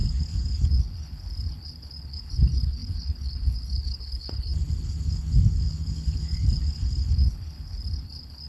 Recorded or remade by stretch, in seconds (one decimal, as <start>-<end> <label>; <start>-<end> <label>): 0.0-8.5 remade